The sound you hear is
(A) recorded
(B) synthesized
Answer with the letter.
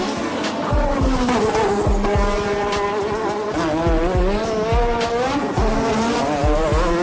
A